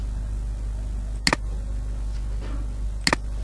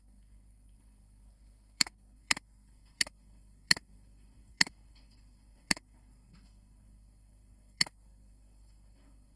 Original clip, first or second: first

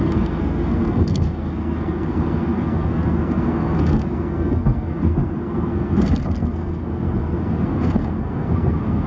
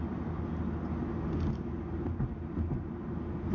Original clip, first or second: second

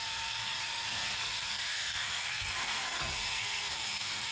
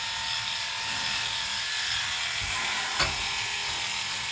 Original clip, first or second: second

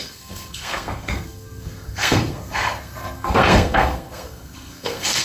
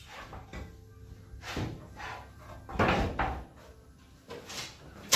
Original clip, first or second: second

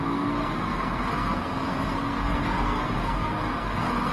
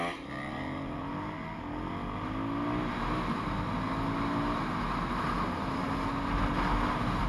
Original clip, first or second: second